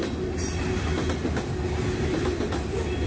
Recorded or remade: recorded